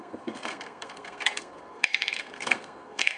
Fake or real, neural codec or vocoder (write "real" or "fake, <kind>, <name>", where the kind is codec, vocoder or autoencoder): fake, codec, SNAC